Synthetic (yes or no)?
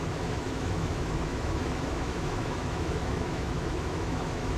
yes